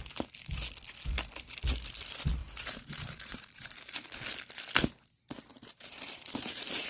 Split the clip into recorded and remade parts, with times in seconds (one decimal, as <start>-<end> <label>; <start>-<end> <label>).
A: 0.0-2.4 recorded; 2.4-3.9 remade; 3.9-5.5 recorded; 5.5-6.9 remade